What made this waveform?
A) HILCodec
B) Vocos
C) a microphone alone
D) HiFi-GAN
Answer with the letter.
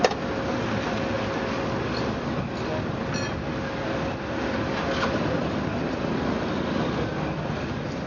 C